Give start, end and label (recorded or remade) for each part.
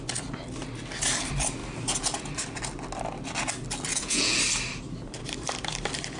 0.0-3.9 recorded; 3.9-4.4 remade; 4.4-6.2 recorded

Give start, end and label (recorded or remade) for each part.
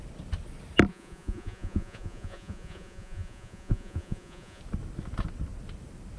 0.0-0.9 recorded; 0.9-4.6 remade; 4.6-6.2 recorded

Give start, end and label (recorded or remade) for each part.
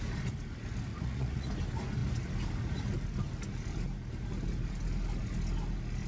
0.0-0.9 recorded; 0.9-1.5 remade; 1.5-6.1 recorded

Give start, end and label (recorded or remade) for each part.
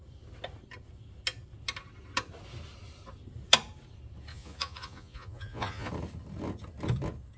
0.0-4.3 recorded; 4.3-5.9 remade; 5.9-7.4 recorded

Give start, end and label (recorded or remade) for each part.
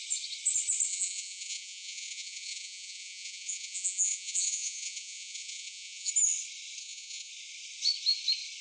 0.0-0.9 recorded; 0.9-6.1 remade; 6.1-6.8 recorded; 6.8-7.3 remade; 7.3-8.6 recorded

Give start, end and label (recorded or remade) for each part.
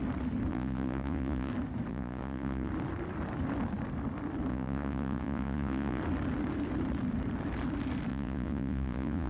0.0-0.5 recorded; 0.5-1.5 remade; 1.5-1.9 recorded; 1.9-2.7 remade; 2.7-4.5 recorded; 4.5-6.0 remade; 6.0-8.1 recorded; 8.1-9.3 remade